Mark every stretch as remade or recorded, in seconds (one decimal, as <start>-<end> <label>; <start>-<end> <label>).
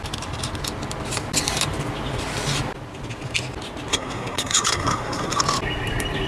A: 0.0-3.9 recorded; 3.9-5.4 remade; 5.4-6.3 recorded